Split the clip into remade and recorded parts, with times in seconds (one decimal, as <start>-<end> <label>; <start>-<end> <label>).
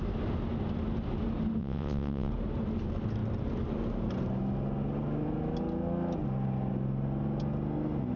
0.0-1.6 recorded; 1.6-2.3 remade; 2.3-8.2 recorded